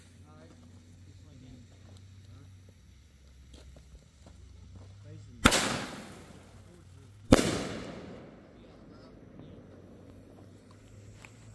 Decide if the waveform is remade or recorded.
recorded